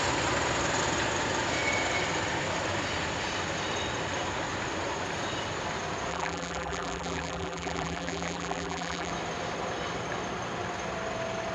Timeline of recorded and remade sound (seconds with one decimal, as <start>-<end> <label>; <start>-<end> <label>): 0.0-6.1 recorded; 6.1-9.1 remade; 9.1-11.5 recorded

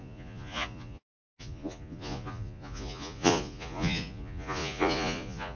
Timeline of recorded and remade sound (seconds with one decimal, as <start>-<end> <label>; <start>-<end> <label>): 0.0-5.6 remade